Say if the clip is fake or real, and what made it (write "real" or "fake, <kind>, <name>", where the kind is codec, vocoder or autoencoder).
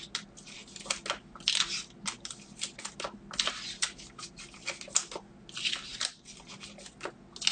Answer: real